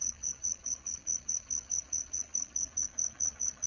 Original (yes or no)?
no